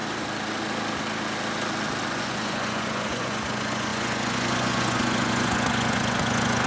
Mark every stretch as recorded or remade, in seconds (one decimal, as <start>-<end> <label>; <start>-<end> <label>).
0.0-2.1 recorded; 2.1-6.7 remade